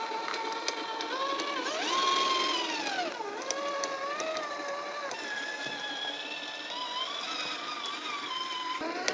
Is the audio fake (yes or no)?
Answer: no